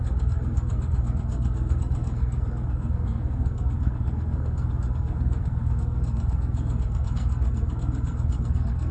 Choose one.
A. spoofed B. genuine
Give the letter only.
A